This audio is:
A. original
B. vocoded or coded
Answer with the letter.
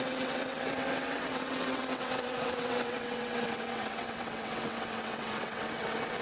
B